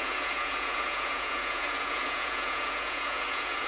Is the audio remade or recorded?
remade